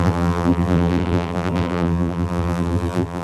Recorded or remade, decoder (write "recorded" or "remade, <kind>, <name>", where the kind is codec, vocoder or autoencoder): remade, vocoder, BigVGAN v2